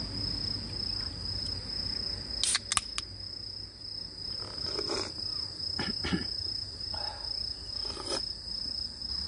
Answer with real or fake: real